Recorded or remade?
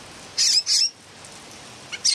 recorded